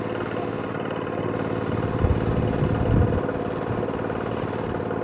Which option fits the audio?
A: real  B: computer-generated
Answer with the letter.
A